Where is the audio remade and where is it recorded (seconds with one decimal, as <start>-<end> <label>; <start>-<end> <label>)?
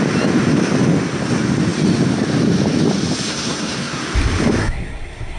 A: 0.0-3.3 recorded; 3.3-4.0 remade; 4.0-4.6 recorded; 4.6-5.4 remade